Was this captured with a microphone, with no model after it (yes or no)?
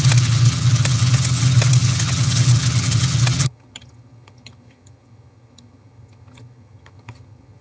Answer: no